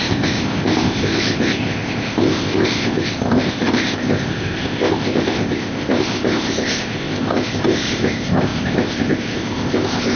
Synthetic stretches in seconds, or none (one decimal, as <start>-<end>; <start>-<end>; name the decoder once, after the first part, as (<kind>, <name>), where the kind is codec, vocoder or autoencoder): 0.0-10.2 (codec, ZipCodec)